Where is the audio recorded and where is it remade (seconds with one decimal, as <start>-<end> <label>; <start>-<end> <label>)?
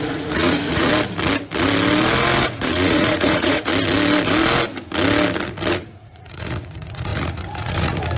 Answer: 0.0-0.9 remade; 0.9-2.4 recorded; 2.4-3.7 remade; 3.7-5.7 recorded; 5.7-8.2 remade